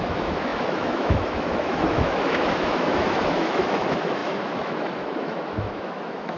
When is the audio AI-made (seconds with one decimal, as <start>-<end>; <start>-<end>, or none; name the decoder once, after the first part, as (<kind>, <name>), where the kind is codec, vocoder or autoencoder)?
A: 0.0-6.4 (autoencoder, DAC-VAE)